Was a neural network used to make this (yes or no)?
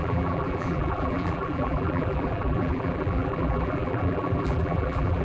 yes